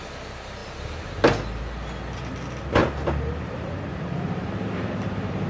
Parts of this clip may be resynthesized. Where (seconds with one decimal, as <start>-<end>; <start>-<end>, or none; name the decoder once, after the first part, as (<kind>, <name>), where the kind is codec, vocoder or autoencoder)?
2.8-4.9 (vocoder, BigVGAN v2)

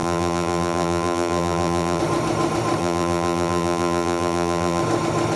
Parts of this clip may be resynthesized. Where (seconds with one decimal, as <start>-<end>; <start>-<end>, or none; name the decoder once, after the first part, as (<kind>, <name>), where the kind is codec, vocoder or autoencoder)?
0.0-2.0 (vocoder, BigVGAN v2); 2.8-4.8

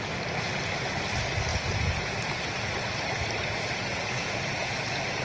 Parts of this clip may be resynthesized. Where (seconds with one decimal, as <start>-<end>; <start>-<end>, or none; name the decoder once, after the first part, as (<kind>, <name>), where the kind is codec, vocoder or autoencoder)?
1.5-2.4 (vocoder, Vocos); 3.9-4.7

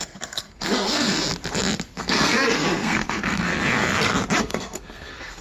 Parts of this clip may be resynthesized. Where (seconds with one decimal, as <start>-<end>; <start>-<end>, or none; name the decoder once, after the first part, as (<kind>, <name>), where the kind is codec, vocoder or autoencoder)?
0.0-1.2 (codec, SNAC); 2.0-3.5; 4.4-5.4

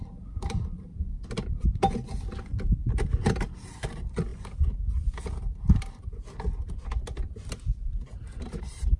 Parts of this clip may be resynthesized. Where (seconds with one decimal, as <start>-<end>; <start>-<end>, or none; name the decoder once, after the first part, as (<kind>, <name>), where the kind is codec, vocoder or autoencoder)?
0.0-0.9 (vocoder, BigVGAN v2); 3.4-4.3; 8.4-9.0

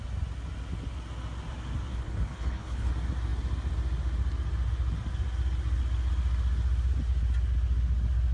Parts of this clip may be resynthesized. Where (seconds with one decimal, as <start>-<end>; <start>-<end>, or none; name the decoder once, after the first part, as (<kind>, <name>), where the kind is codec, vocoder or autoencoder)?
1.9-2.9 (codec, HILCodec)